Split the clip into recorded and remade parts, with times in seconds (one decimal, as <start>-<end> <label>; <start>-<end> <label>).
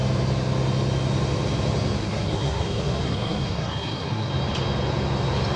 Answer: 0.0-2.0 recorded; 2.0-4.3 remade; 4.3-5.6 recorded